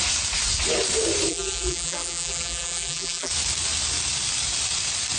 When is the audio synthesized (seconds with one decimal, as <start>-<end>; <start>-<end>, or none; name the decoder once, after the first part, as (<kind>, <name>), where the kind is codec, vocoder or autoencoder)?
1.3-3.3 (vocoder, BigVGAN v2)